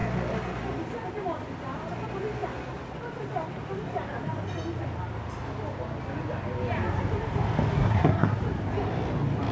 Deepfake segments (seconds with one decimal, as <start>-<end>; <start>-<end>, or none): 7.7-8.4